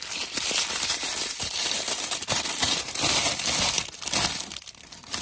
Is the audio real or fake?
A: real